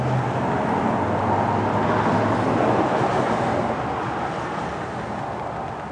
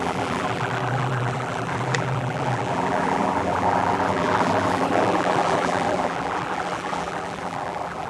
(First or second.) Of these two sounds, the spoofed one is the second